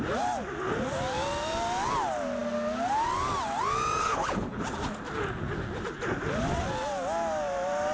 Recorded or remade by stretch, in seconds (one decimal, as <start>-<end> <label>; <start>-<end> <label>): 0.0-4.0 recorded; 4.0-4.6 remade; 4.6-7.9 recorded